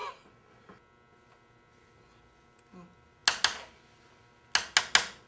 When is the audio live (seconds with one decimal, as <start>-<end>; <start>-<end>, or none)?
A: 0.0-5.3